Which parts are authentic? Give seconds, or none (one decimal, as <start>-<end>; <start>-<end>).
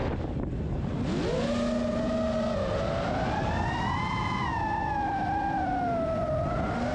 1.0-4.5; 5.7-6.9